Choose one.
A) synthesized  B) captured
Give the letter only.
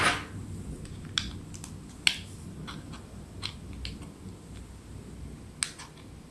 B